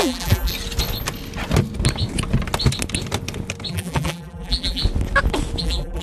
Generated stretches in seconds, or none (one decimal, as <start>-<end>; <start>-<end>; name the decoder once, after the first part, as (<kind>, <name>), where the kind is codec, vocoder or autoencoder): 0.0-0.5 (vocoder, BigVGAN v2); 3.7-4.8; 5.6-6.0